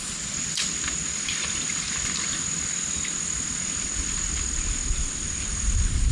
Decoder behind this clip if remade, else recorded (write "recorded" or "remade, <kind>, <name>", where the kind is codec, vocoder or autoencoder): recorded